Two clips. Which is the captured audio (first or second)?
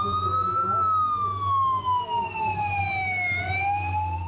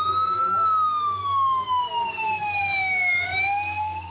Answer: first